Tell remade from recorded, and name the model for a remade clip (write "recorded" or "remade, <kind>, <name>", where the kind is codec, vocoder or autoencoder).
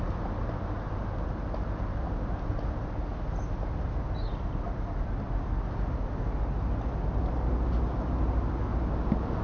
recorded